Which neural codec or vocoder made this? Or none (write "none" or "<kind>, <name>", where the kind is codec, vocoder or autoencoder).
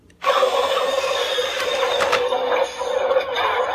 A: none